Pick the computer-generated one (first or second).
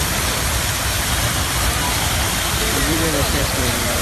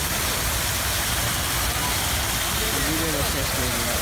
first